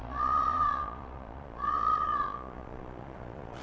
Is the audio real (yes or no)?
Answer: no